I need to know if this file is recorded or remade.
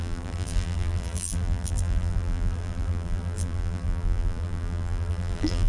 remade